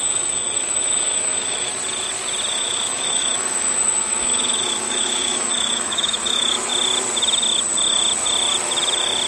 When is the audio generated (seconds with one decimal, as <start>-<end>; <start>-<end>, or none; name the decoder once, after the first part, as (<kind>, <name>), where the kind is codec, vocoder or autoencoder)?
0.0-1.7 (autoencoder, DAC-VAE); 2.5-6.7